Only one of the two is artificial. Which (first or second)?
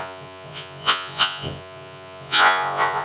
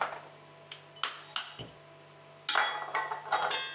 first